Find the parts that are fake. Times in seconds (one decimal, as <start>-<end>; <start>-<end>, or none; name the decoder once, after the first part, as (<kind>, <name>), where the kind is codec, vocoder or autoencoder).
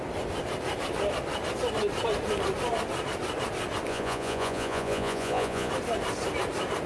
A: 3.9-5.7 (vocoder, Vocos)